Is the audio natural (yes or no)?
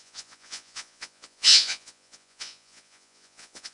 no